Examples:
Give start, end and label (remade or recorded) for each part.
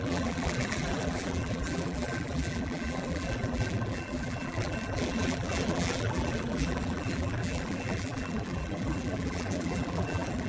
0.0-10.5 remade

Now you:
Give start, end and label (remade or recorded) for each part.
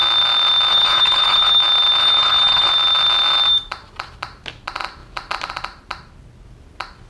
0.0-0.7 recorded; 0.7-1.6 remade; 1.6-2.0 recorded; 2.0-2.7 remade; 2.7-7.1 recorded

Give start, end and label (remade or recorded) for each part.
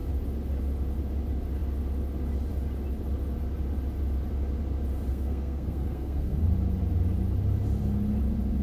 0.0-5.1 recorded; 5.1-6.5 remade; 6.5-8.6 recorded